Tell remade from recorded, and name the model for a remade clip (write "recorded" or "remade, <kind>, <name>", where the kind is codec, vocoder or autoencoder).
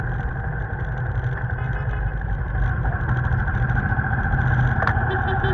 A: recorded